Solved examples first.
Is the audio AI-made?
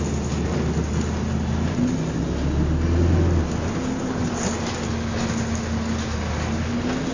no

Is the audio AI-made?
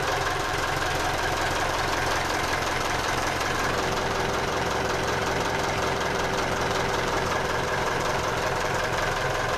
yes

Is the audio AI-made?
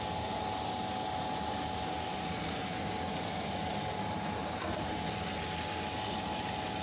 no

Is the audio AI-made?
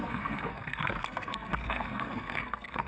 yes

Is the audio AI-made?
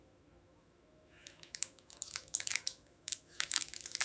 yes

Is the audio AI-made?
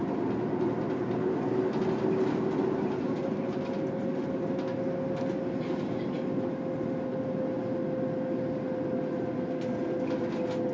no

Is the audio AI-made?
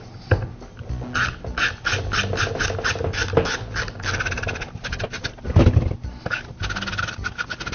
no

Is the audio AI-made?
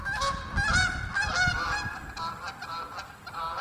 no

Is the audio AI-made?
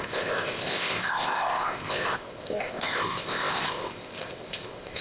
yes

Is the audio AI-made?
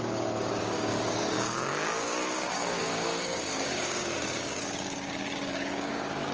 yes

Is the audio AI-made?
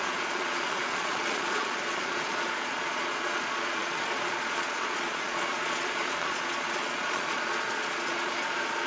yes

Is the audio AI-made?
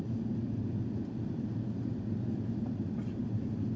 no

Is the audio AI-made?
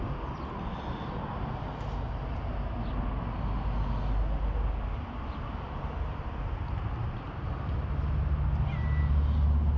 no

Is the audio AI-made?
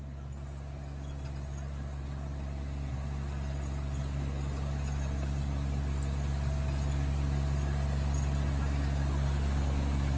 no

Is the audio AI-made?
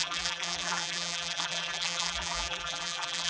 yes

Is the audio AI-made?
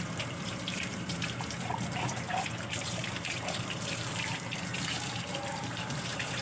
yes